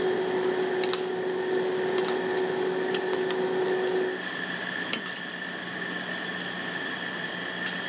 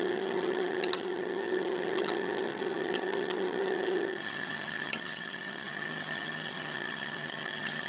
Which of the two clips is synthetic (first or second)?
second